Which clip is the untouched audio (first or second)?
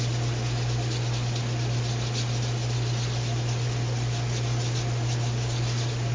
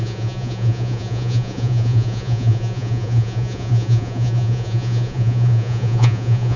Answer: first